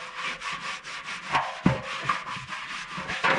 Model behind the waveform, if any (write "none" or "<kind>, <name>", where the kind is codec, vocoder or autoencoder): none